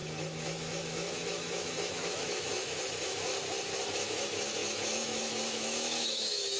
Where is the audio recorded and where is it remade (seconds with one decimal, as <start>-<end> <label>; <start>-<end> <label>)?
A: 0.0-3.3 remade; 3.3-3.9 recorded; 3.9-6.6 remade